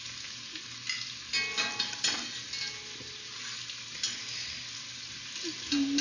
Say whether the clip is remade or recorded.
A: recorded